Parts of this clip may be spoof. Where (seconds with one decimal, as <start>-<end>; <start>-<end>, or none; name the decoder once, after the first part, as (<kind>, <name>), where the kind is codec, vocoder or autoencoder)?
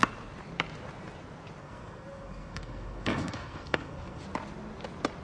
1.6-4.2 (codec, SNAC)